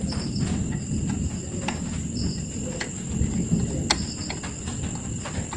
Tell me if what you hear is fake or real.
real